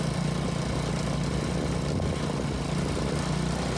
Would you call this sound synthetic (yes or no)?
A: no